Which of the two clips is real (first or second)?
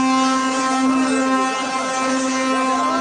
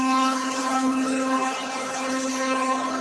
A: first